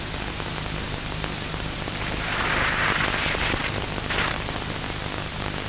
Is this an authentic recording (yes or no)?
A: yes